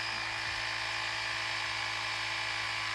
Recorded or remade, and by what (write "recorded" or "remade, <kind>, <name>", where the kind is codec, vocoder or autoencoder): recorded